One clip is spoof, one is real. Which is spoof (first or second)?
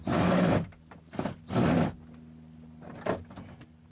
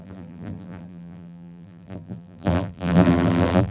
second